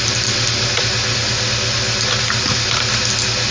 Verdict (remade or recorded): recorded